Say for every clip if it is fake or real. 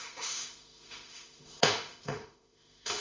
fake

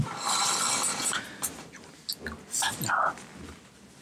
real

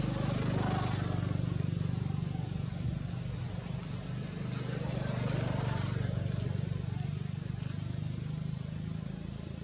real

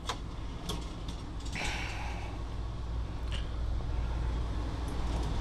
real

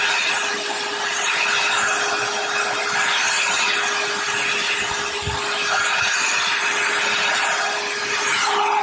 real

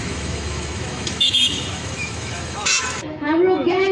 fake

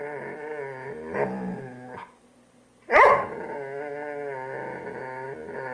real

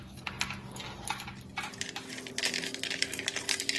real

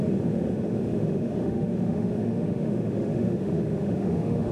fake